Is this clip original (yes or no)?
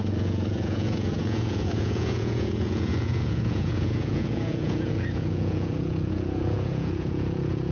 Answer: no